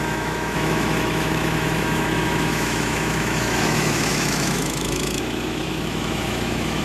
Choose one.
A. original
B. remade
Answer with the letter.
B